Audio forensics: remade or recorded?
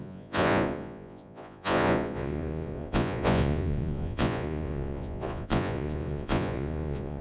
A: remade